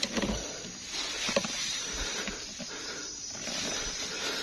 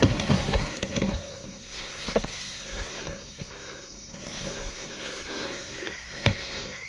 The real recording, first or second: first